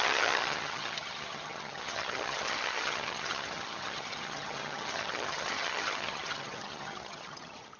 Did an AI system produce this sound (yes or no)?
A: yes